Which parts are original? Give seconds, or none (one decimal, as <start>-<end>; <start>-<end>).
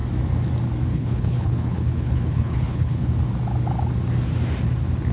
0.0-0.9; 3.1-5.1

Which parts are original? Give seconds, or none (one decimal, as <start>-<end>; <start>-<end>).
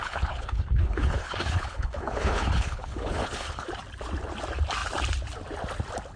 3.7-6.2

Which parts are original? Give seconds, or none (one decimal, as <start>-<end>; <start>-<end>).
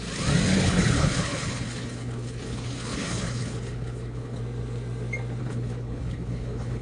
0.0-0.5; 4.4-5.4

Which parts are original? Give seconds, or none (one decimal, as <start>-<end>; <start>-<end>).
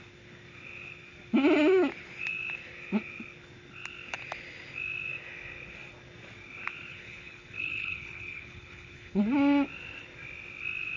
0.0-6.9; 9.2-11.0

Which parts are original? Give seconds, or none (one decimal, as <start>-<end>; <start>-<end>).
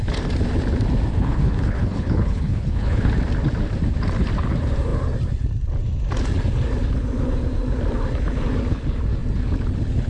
0.0-1.1; 3.1-10.1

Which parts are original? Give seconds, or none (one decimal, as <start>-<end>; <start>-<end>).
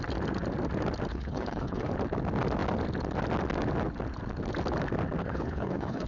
0.0-1.1; 1.9-5.2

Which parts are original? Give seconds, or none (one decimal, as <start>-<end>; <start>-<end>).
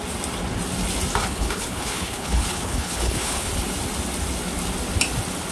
0.0-1.2; 3.5-5.5